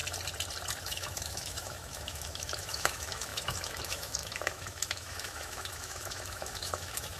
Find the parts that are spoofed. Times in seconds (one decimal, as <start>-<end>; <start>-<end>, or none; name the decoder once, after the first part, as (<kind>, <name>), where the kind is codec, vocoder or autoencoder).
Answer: 0.8-7.2 (autoencoder, DAC-VAE)